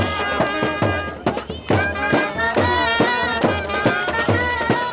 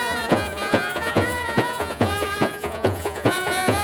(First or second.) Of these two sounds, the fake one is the second